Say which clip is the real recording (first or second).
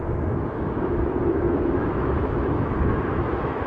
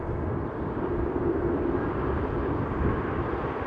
second